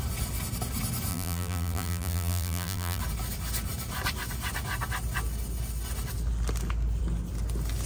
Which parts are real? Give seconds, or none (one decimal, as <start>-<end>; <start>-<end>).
0.0-1.1; 3.0-7.9